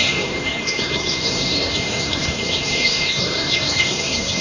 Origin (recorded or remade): remade